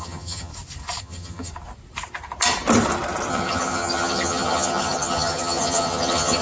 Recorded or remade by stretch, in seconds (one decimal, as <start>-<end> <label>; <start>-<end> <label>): 0.0-0.5 remade; 0.5-1.0 recorded; 1.0-1.5 remade; 1.5-3.3 recorded; 3.3-6.4 remade